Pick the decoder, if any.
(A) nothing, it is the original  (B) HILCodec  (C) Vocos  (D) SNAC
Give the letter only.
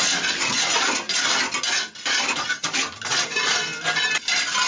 A